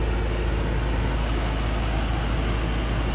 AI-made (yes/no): no